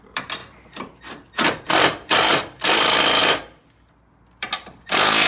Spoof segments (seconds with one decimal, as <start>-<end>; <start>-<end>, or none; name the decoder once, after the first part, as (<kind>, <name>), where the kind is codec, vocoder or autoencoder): 0.0-3.2 (vocoder, BigVGAN v2); 4.1-5.3